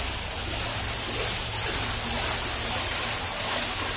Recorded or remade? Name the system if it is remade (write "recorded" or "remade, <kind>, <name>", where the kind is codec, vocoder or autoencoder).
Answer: recorded